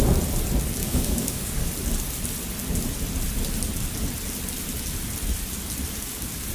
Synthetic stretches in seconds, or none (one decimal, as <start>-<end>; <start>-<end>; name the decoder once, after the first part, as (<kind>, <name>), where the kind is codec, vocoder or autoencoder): 0.8-1.7 (codec, DAC)